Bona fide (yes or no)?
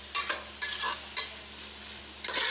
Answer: yes